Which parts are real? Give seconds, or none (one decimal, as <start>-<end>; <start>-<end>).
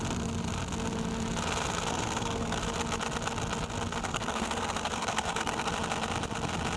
0.0-1.9; 2.6-4.0; 5.7-6.8